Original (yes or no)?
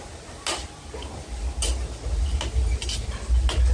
yes